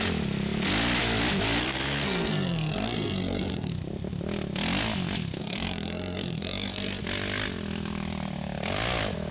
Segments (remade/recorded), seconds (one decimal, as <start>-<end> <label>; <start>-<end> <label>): 0.0-1.6 recorded; 1.6-3.7 remade; 3.7-5.4 recorded; 5.4-7.0 remade; 7.0-9.3 recorded